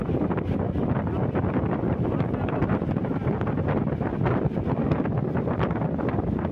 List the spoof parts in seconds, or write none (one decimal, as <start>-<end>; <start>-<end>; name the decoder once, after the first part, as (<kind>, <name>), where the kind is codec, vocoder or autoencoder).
none